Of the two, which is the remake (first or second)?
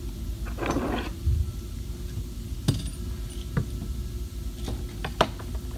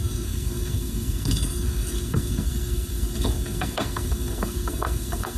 second